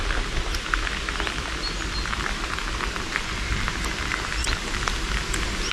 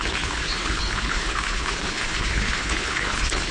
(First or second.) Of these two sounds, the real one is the first